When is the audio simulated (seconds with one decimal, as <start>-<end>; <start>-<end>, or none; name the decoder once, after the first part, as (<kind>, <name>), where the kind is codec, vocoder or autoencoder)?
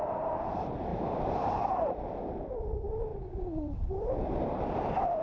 0.0-5.2 (vocoder, BigVGAN v2)